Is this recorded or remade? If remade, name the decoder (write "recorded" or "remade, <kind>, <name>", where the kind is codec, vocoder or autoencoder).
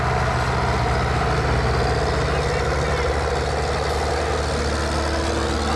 recorded